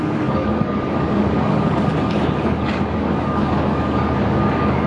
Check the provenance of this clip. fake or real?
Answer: fake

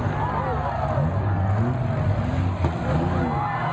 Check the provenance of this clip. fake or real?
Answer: real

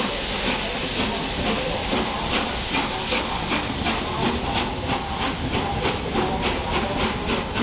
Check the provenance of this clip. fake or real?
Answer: real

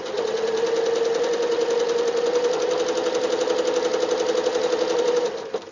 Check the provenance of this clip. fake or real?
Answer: real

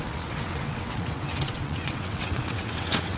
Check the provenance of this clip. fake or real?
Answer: fake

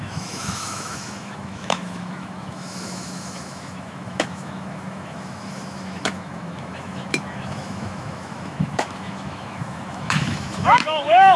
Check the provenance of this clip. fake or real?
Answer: fake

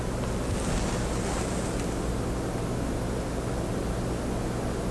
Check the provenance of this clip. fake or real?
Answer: real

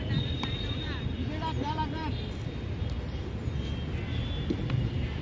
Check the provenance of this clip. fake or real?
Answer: real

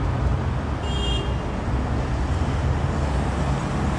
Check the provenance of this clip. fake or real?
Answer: real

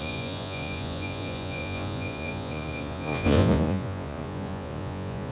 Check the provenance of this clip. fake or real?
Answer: fake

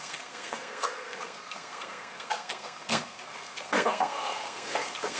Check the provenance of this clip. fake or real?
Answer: fake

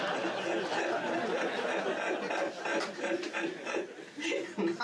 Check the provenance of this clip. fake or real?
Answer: real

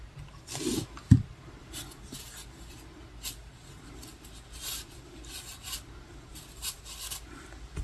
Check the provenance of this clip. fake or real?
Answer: real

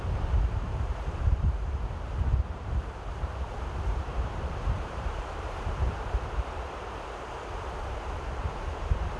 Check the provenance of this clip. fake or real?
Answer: fake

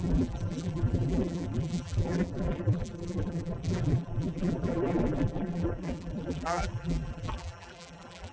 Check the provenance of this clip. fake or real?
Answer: fake